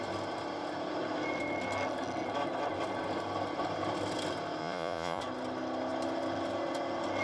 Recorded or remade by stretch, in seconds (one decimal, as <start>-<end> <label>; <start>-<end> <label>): 0.0-4.6 recorded; 4.6-5.2 remade; 5.2-7.2 recorded